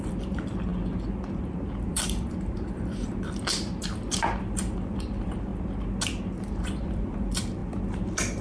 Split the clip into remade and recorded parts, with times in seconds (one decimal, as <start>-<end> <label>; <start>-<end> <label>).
0.0-0.7 remade; 0.7-1.8 recorded; 1.8-5.5 remade; 5.5-6.5 recorded; 6.5-8.4 remade